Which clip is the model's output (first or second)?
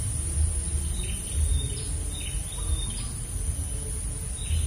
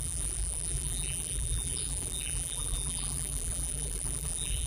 second